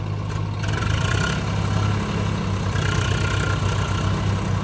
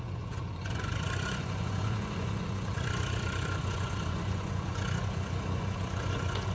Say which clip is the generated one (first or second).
second